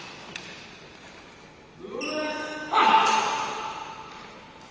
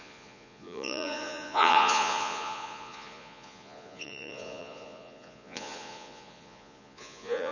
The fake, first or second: second